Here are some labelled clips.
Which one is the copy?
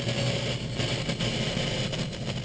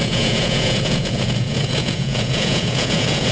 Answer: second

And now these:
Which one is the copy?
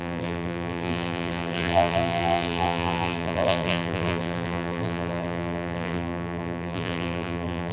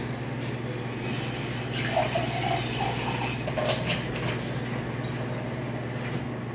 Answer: first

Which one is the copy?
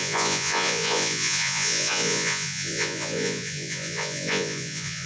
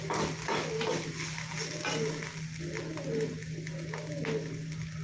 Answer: first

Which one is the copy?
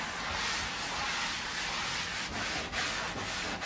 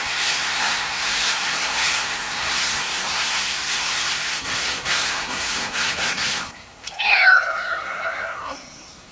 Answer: second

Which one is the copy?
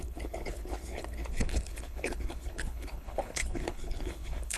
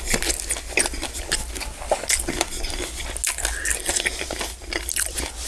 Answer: first